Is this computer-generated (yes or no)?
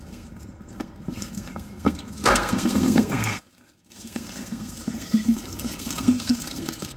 yes